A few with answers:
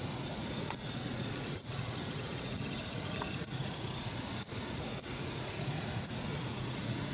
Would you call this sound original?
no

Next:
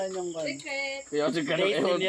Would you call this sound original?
yes